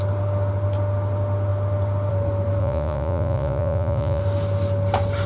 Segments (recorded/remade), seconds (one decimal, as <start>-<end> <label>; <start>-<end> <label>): 0.0-2.6 recorded; 2.6-4.2 remade; 4.2-5.3 recorded

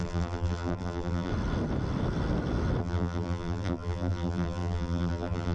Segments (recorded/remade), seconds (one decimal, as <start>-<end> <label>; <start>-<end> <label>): 0.0-1.3 remade; 1.3-2.8 recorded; 2.8-5.5 remade

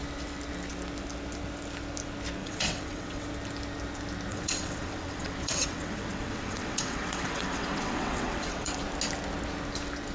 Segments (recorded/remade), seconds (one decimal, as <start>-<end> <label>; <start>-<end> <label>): 0.0-2.4 recorded; 2.4-3.3 remade; 3.3-4.3 recorded; 4.3-8.8 remade; 8.8-10.1 recorded

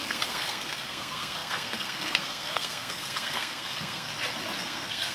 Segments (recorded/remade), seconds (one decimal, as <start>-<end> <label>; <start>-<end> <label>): 0.0-4.1 remade; 4.1-4.6 recorded; 4.6-5.1 remade

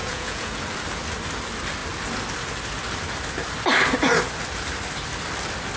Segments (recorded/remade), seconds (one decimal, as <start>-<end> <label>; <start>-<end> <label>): 0.0-0.6 remade; 0.6-5.8 recorded

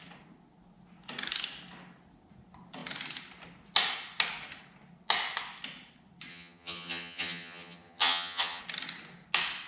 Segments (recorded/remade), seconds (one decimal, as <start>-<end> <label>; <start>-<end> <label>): 0.0-6.3 recorded; 6.3-8.6 remade; 8.6-9.7 recorded